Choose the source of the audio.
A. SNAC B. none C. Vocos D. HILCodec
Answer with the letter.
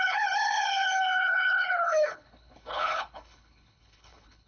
D